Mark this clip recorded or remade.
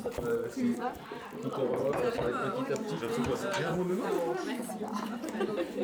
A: remade